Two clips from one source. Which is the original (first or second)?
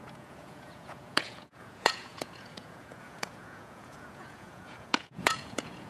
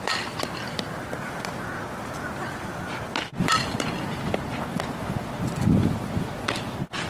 second